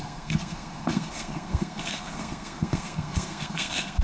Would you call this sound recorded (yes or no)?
no